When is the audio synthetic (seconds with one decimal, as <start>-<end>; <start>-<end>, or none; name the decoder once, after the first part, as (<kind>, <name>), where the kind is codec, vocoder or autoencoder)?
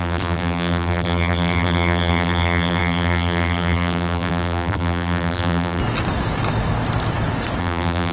0.0-5.8 (vocoder, BigVGAN v2); 7.6-8.1